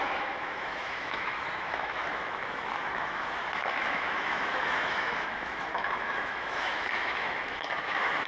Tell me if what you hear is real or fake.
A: fake